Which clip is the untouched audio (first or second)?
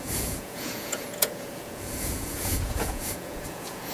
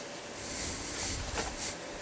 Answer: second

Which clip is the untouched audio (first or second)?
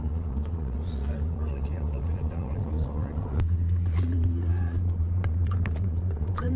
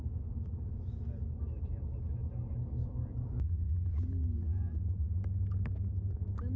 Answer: second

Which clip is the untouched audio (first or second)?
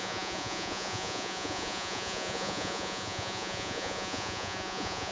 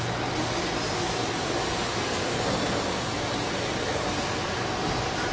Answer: second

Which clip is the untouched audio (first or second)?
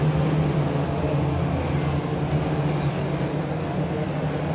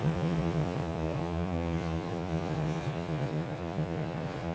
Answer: first